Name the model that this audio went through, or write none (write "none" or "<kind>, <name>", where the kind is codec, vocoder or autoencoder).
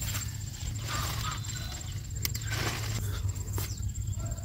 none